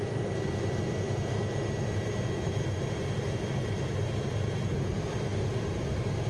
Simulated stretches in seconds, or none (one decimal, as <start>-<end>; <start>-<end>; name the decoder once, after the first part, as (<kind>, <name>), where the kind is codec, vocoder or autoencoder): none